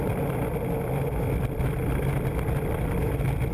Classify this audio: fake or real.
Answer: real